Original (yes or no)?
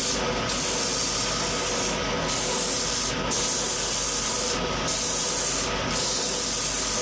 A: yes